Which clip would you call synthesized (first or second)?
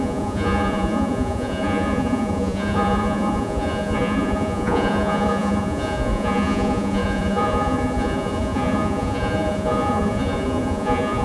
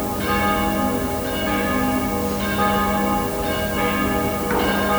first